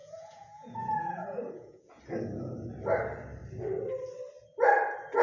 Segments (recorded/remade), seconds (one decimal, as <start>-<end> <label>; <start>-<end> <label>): 0.0-2.0 remade; 2.0-5.2 recorded